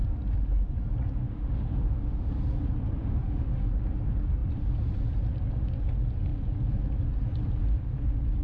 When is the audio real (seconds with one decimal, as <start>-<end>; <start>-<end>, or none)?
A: 0.0-1.2; 2.3-3.0; 3.7-8.4

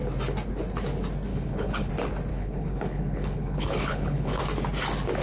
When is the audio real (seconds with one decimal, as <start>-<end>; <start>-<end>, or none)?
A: 0.0-1.3; 1.9-2.3; 4.4-5.2

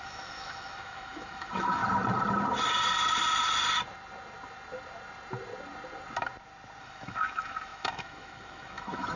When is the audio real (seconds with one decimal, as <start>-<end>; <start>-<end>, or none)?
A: 1.8-6.8

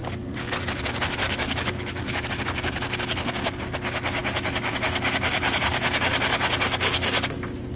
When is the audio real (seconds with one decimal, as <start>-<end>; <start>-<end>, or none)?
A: 0.5-1.2; 2.3-7.8

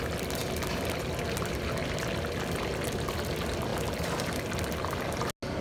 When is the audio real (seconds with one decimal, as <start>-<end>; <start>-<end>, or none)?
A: 0.0-5.6

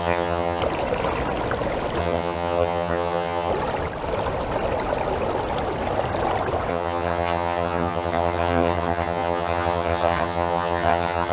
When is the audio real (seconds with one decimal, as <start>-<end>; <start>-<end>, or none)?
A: 0.6-2.0; 3.5-6.7

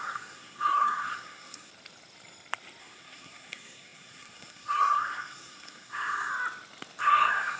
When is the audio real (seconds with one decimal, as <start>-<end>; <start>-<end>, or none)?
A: 1.7-2.8; 6.3-7.0